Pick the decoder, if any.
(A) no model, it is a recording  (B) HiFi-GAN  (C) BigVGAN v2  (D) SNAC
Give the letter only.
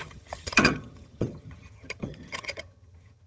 B